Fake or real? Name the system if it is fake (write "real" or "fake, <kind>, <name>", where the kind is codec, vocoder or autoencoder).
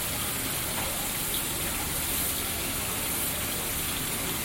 real